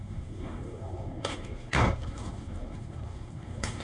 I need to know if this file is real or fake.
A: fake